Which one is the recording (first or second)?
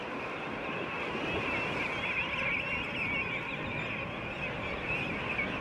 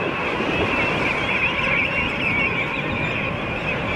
first